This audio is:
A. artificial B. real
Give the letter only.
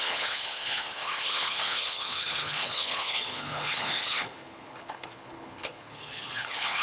A